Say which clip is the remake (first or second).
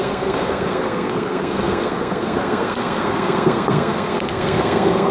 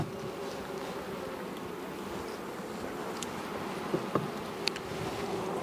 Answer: first